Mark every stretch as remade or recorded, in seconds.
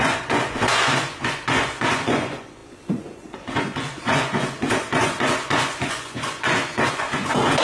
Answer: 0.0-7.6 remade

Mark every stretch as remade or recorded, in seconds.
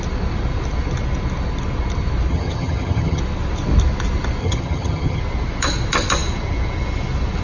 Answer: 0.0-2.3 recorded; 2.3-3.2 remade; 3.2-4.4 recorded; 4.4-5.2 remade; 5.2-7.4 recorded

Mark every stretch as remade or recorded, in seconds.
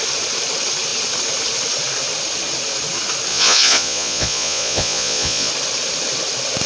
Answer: 0.0-3.3 recorded; 3.3-5.5 remade; 5.5-6.7 recorded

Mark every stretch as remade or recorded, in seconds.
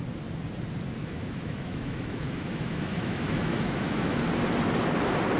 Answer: 0.0-1.0 recorded; 1.0-4.2 remade; 4.2-5.4 recorded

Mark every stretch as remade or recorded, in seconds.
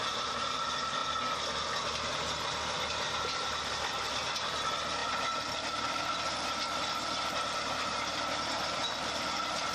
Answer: 0.0-9.7 recorded